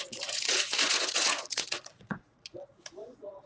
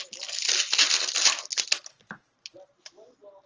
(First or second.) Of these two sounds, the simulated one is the first